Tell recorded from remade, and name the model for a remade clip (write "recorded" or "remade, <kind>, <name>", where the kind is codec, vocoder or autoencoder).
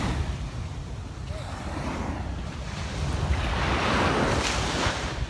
recorded